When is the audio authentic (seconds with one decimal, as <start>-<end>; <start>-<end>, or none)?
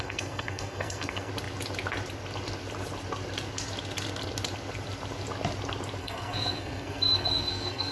1.3-6.0